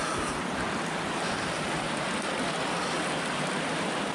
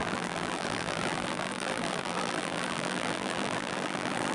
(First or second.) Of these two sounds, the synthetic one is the second